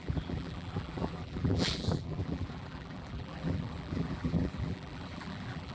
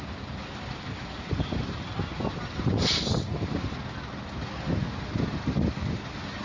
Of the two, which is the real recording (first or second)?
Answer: second